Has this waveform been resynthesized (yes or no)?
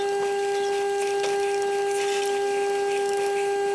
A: no